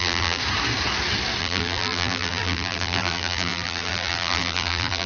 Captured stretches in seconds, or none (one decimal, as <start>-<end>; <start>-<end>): 0.4-1.4